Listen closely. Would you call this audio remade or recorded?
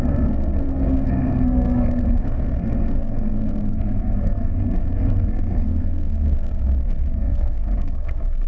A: remade